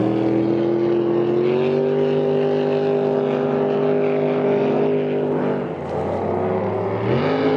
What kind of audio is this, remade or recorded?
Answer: recorded